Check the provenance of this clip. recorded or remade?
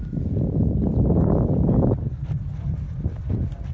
recorded